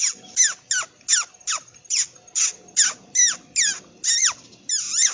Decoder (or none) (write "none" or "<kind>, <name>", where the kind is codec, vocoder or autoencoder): none